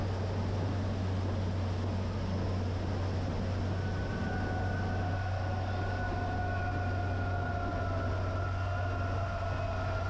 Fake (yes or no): no